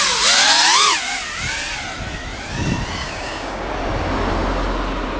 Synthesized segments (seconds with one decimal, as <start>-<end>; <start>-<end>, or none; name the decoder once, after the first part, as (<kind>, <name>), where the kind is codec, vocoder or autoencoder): 3.0-3.7 (codec, DAC)

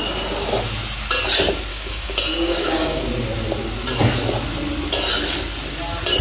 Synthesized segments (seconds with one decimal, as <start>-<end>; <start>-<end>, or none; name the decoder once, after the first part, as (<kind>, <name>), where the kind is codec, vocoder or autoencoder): 1.7-3.1 (codec, DAC)

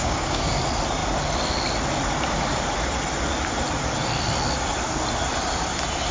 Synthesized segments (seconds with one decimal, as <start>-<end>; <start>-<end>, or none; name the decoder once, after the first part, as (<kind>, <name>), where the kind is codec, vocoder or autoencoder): 0.0-0.6 (codec, DAC)

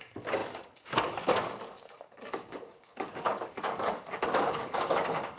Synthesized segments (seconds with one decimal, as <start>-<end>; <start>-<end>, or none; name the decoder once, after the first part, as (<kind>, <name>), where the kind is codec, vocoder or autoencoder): 0.0-5.4 (codec, DAC)

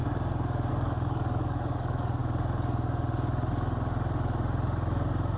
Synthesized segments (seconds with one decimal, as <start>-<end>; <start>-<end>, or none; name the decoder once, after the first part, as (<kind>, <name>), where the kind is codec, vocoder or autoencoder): 0.7-2.2 (codec, DAC)

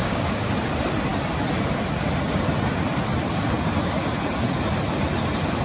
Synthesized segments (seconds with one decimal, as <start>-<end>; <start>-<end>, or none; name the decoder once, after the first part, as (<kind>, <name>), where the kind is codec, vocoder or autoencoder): 0.0-0.5 (codec, DAC)